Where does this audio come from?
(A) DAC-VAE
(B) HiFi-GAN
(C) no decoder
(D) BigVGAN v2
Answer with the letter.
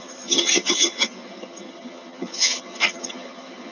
B